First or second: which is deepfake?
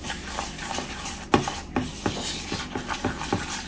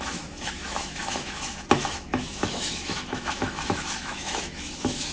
second